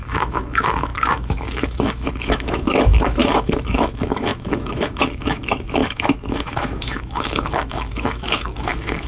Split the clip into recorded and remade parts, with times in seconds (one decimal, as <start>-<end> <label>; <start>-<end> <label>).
0.0-9.1 remade